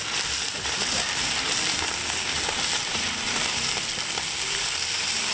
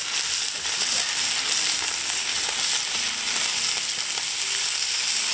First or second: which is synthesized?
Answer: first